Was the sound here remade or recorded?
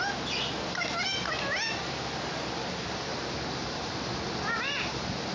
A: recorded